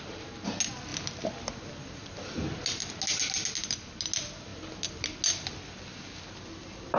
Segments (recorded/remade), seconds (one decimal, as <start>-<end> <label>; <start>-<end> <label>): 0.0-7.0 recorded